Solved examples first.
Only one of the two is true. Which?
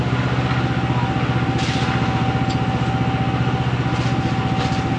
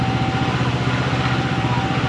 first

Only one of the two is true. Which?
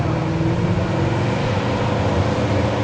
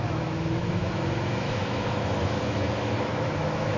first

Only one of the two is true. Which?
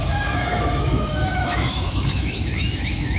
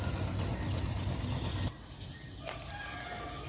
second